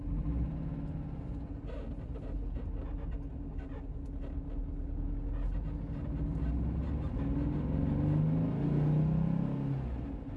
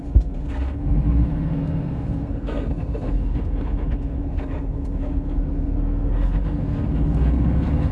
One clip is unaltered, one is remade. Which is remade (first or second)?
second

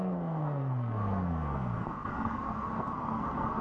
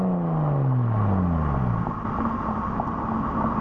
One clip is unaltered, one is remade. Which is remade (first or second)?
first